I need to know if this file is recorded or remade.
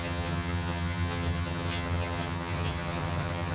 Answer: remade